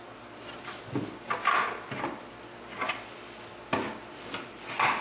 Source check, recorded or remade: recorded